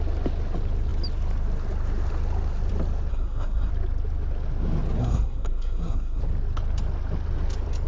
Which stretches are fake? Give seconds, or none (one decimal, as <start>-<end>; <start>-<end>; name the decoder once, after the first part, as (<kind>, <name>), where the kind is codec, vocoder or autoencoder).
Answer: 3.1-3.7 (codec, SNAC); 5.0-6.2